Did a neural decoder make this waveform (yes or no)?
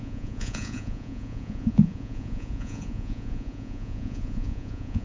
yes